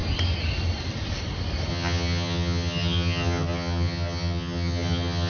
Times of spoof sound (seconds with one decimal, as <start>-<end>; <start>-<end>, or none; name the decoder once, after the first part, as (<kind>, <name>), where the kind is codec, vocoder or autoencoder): 1.7-5.3 (vocoder, HiFi-GAN)